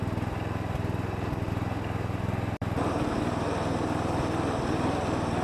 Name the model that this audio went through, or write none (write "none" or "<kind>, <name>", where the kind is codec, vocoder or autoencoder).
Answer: none